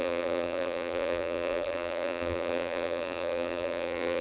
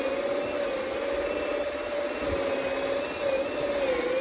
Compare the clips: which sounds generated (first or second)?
first